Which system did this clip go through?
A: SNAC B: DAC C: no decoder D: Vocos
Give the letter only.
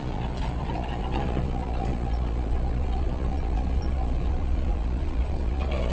D